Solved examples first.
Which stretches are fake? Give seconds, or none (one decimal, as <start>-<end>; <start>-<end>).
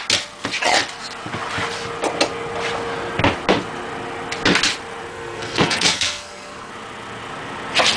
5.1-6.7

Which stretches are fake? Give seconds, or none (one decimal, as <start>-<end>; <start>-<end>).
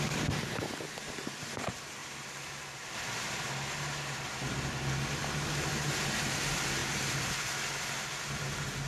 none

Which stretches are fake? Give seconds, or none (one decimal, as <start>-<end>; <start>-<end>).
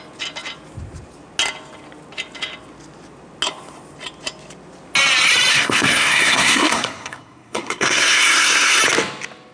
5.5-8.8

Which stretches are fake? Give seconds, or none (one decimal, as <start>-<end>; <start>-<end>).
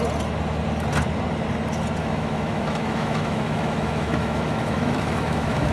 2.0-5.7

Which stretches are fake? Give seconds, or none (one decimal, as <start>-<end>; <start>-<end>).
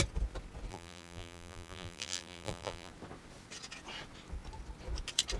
0.7-2.9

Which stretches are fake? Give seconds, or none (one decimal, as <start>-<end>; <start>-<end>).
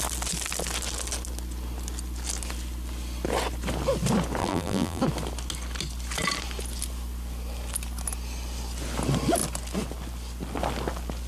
4.4-5.0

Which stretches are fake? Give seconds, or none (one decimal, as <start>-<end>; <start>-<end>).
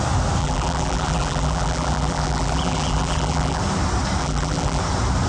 0.4-3.6; 4.2-4.8